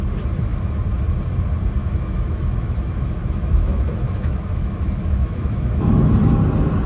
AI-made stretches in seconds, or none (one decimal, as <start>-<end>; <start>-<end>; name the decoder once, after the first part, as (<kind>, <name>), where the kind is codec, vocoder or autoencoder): 1.8-5.9 (autoencoder, DAC-VAE)